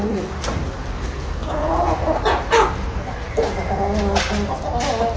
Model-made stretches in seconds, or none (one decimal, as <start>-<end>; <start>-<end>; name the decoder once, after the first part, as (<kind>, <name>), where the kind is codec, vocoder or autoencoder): none